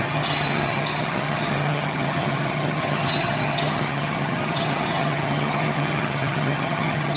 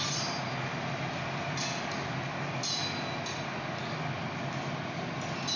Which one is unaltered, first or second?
second